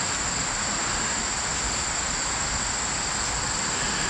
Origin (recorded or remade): recorded